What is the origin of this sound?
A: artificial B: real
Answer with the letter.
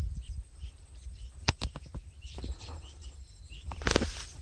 A